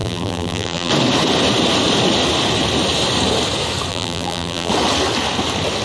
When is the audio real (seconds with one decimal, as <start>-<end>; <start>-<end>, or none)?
0.9-3.9; 4.7-5.8